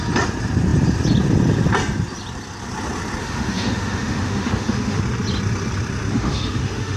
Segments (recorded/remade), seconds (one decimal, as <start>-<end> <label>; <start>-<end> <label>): 0.0-3.2 recorded; 3.2-5.0 remade; 5.0-6.1 recorded; 6.1-7.0 remade